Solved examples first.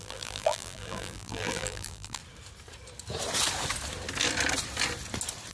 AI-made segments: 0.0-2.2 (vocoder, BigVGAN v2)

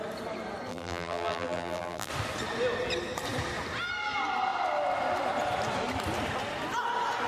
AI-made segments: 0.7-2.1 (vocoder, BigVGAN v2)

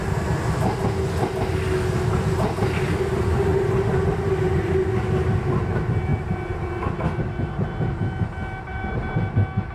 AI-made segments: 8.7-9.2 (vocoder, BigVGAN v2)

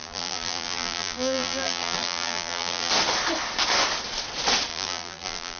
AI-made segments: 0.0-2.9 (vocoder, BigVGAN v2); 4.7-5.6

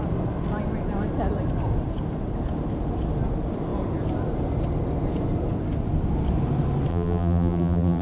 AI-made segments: 6.9-8.0 (vocoder, BigVGAN v2)

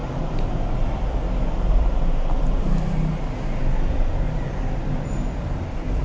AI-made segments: 0.0-2.6 (vocoder, BigVGAN v2); 3.6-6.0